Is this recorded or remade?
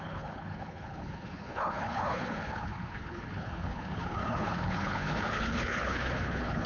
remade